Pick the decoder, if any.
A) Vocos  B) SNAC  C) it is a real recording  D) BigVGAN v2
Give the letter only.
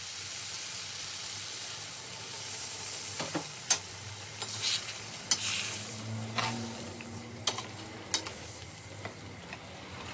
C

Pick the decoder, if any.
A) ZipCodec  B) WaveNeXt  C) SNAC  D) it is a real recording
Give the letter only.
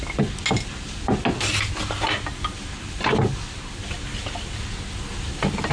D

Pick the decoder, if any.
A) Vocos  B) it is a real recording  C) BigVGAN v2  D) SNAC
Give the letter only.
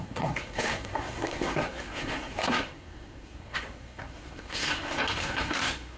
D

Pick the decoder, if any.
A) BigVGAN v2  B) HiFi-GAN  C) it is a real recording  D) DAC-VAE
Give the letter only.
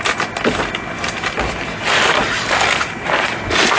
C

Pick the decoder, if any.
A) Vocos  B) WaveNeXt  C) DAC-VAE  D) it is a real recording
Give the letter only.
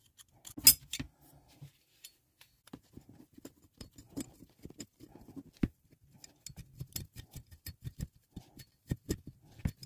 D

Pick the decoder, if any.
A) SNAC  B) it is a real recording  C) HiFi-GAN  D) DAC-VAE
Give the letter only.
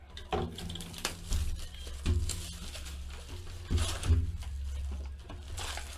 B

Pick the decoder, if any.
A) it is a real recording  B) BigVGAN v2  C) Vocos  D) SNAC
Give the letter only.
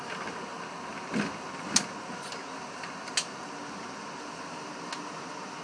A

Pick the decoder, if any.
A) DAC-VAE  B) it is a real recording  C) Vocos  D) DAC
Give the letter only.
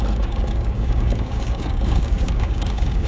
D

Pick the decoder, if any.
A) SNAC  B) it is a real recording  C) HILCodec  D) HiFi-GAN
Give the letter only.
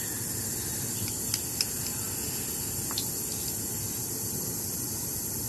B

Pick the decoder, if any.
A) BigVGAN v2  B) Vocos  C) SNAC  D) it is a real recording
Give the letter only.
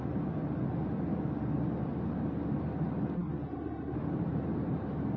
D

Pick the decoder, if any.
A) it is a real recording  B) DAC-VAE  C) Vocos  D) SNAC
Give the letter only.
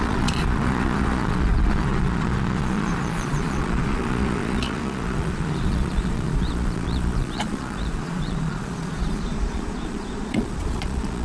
C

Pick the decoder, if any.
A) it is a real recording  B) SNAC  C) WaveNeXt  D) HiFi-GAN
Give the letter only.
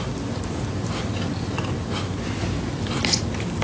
A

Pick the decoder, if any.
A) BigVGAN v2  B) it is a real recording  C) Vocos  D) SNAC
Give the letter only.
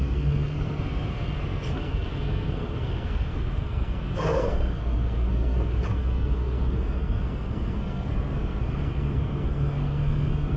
D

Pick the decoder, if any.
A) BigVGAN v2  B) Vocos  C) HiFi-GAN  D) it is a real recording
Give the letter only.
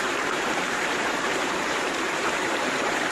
A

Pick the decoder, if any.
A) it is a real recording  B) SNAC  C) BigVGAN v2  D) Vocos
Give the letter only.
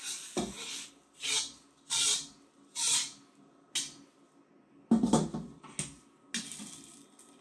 A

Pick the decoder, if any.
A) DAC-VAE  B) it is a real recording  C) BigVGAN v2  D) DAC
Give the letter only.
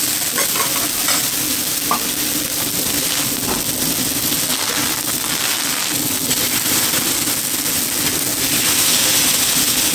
B